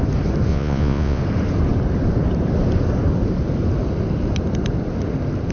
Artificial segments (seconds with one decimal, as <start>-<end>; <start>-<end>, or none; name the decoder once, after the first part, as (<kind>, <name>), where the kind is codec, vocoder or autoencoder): 0.5-1.2 (vocoder, Vocos)